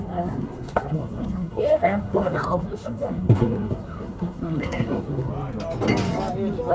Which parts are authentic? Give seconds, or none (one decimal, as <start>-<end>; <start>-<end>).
5.3-6.7